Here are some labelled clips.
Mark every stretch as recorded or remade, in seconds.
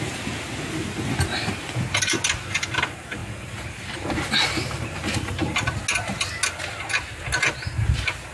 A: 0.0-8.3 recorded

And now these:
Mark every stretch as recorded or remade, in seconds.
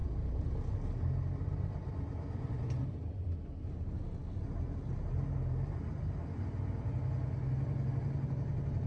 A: 0.0-8.9 recorded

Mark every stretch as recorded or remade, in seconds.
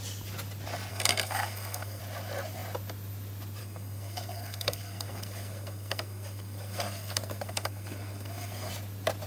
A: 0.0-0.9 recorded; 0.9-2.0 remade; 2.0-3.6 recorded; 3.6-8.7 remade; 8.7-9.3 recorded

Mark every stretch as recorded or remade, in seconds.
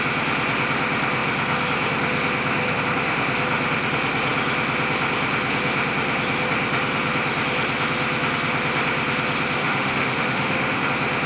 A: 0.0-9.6 recorded; 9.6-10.9 remade; 10.9-11.3 recorded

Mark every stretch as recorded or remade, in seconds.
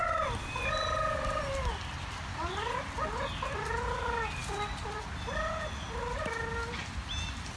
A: 0.0-7.6 recorded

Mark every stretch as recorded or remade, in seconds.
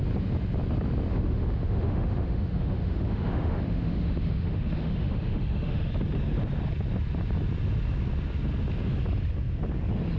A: 0.0-1.1 recorded; 1.1-5.9 remade; 5.9-10.2 recorded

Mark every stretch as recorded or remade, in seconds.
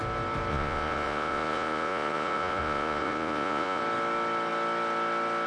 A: 0.0-0.5 recorded; 0.5-3.8 remade; 3.8-5.5 recorded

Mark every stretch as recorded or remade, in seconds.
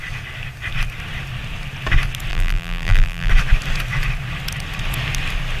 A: 0.0-2.3 recorded; 2.3-3.3 remade; 3.3-5.6 recorded